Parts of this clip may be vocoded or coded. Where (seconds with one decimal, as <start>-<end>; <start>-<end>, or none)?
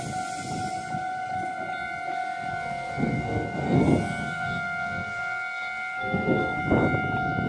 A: 2.5-6.6